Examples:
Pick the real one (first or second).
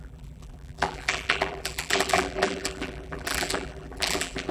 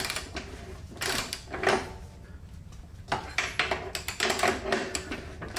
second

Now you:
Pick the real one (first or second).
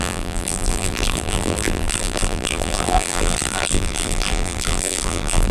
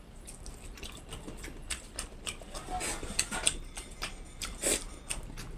second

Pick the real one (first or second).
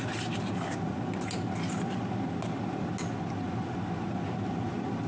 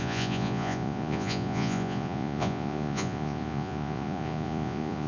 first